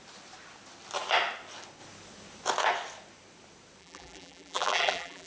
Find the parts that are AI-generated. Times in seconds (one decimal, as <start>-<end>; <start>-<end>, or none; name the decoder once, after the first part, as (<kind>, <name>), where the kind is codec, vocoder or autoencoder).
3.8-5.3 (vocoder, BigVGAN v2)